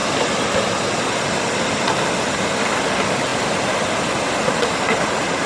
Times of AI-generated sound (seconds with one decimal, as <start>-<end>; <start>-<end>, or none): none